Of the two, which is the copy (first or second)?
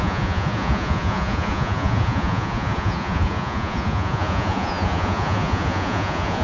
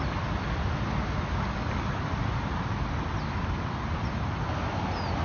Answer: first